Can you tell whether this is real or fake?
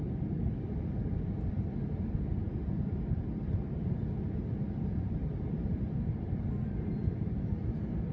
real